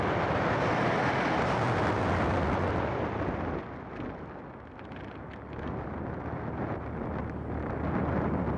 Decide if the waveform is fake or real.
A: real